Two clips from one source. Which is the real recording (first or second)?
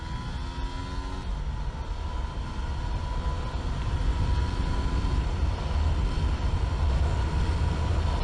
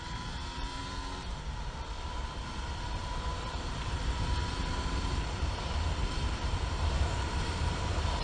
first